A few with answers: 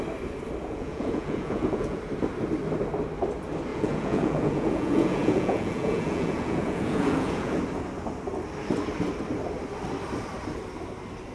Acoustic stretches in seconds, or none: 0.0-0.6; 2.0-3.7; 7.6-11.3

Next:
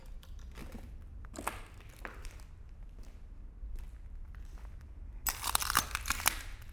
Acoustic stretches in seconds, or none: 0.0-6.7

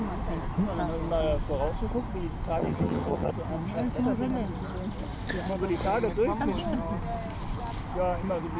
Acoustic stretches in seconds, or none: 0.0-2.6; 3.3-8.6